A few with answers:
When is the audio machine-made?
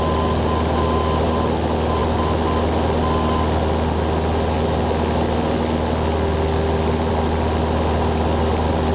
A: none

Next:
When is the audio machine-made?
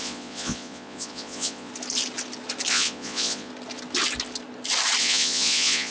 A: 0.0-1.7 (vocoder, Vocos); 2.7-3.5; 5.0-5.9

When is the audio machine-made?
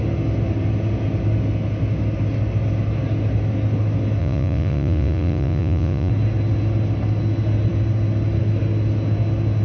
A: 4.2-6.1 (vocoder, Vocos)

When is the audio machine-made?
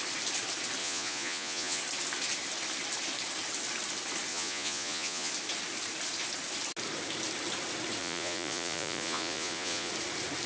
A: 0.8-1.8 (vocoder, Vocos); 4.3-5.3; 8.0-9.9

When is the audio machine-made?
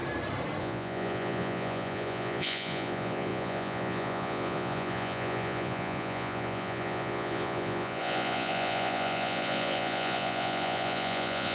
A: 0.6-11.5 (vocoder, Vocos)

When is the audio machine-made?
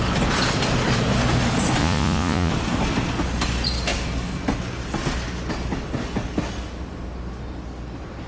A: 1.8-2.5 (vocoder, Vocos)